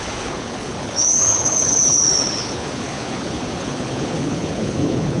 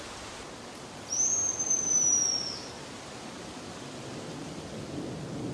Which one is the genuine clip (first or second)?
second